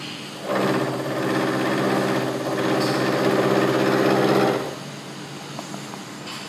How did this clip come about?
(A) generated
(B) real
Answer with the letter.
B